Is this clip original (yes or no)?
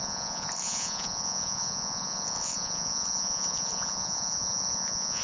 no